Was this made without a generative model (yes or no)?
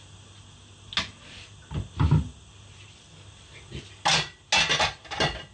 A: yes